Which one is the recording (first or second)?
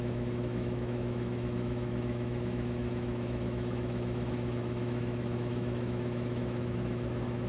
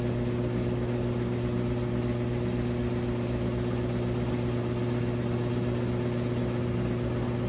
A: second